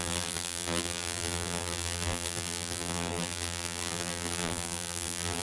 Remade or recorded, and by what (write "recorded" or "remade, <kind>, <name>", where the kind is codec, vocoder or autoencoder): remade, vocoder, BigVGAN v2